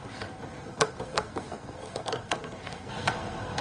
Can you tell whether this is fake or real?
fake